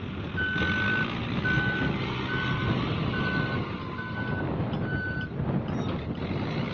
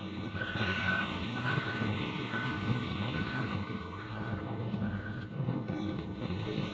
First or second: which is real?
first